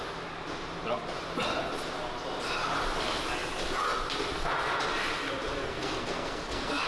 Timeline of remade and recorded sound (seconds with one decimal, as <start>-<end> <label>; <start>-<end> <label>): 0.0-5.6 recorded; 5.6-6.9 remade